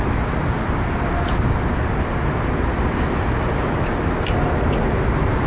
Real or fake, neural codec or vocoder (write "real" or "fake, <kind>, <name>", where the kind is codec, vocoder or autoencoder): real